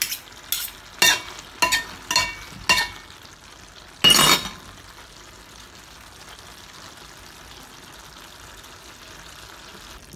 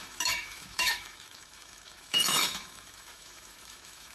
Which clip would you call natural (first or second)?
first